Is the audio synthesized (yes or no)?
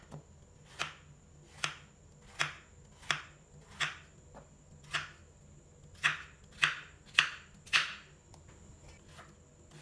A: no